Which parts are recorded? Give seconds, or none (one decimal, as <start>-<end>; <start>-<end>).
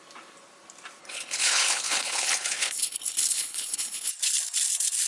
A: 0.0-1.0; 4.1-5.1